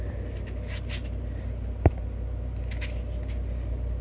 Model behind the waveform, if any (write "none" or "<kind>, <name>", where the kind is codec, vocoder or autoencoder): none